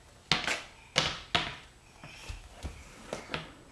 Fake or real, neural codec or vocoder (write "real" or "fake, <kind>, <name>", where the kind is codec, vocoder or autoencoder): real